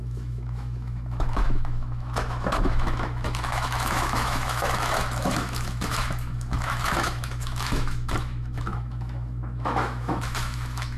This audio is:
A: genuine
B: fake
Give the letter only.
B